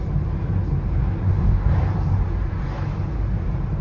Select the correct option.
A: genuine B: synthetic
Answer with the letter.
A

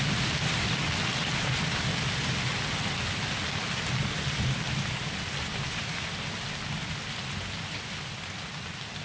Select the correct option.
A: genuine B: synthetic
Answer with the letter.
A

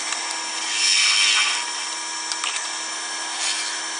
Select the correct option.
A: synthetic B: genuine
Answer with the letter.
B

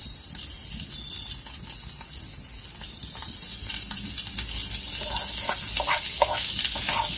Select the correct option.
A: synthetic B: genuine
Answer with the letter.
B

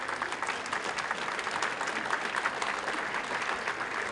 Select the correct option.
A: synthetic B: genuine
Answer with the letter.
B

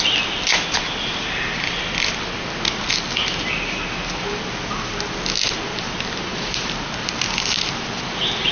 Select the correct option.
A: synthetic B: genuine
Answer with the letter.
B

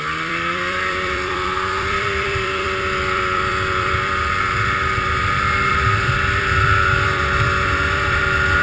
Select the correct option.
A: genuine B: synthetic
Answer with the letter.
B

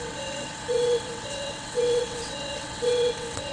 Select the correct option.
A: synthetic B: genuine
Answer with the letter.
A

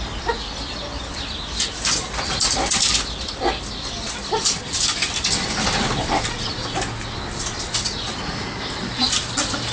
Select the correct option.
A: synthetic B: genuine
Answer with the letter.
B